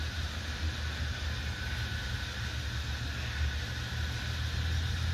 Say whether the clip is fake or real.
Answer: real